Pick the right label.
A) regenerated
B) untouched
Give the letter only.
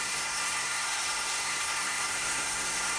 A